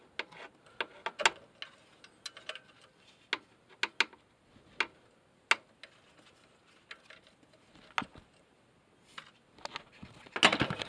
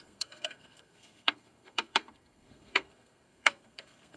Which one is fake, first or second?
second